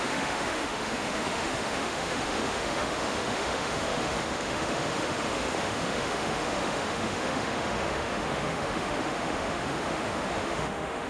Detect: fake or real fake